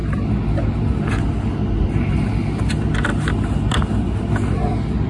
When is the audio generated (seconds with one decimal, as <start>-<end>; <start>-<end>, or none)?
none